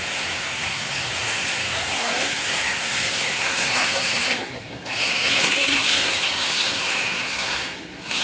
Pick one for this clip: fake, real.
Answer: fake